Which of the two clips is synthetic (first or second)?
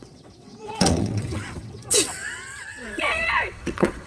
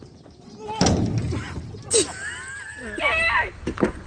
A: first